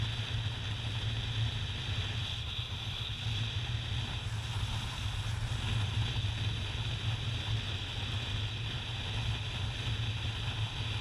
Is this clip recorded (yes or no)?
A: yes